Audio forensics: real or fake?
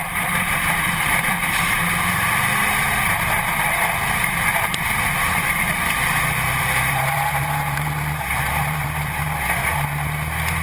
fake